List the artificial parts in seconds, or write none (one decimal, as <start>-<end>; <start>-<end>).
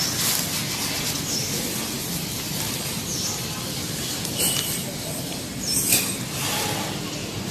none